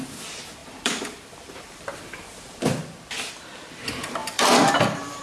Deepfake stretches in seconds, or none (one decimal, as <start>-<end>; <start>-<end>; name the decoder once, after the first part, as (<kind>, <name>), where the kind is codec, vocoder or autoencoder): 0.6-2.6 (vocoder, BigVGAN v2); 4.2-5.2